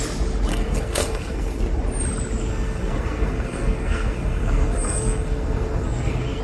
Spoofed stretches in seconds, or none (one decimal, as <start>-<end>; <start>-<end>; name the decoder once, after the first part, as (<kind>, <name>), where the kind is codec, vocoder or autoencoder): 0.5-1.6 (codec, SNAC); 2.5-6.4